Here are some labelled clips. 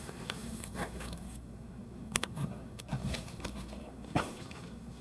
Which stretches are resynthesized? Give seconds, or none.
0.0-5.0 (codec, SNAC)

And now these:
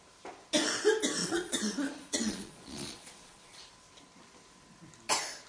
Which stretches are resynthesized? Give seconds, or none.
1.2-3.6 (vocoder, Vocos)

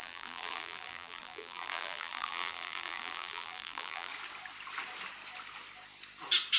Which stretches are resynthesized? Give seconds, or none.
0.0-4.1 (vocoder, BigVGAN v2)

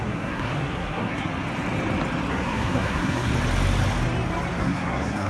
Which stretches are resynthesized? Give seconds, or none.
0.0-1.3 (codec, SNAC); 2.3-3.3; 4.6-5.3

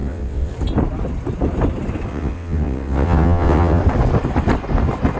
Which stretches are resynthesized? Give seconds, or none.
0.0-0.5 (vocoder, WaveNeXt); 2.1-3.8

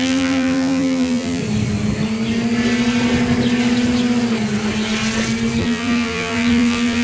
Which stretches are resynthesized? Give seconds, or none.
0.0-1.4 (vocoder, BigVGAN v2); 5.6-7.0

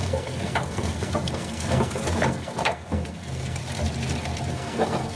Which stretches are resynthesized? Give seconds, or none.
0.0-3.6 (codec, SNAC); 4.5-5.2

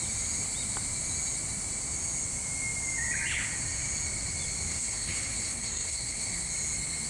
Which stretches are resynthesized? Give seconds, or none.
4.7-6.5 (codec, SNAC)